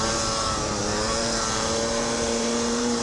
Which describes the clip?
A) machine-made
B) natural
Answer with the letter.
A